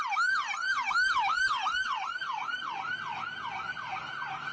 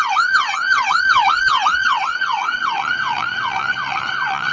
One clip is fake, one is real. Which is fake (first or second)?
second